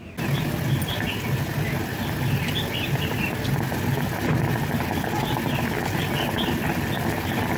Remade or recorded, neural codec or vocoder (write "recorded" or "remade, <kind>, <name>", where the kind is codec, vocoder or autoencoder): recorded